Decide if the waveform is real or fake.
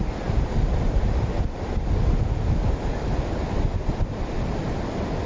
real